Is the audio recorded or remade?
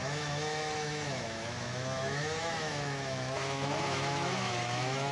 remade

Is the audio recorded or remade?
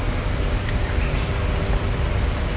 recorded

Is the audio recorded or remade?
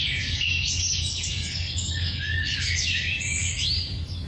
remade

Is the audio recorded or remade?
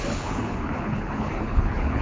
remade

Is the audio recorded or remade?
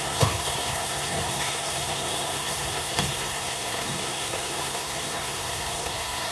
remade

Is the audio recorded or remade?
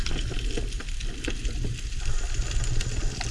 recorded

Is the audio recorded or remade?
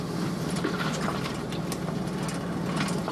recorded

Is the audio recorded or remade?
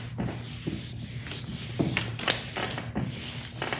recorded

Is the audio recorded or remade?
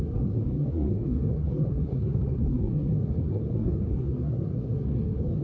remade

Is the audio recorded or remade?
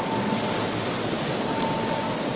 recorded